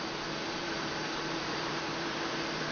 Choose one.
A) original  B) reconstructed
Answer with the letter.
B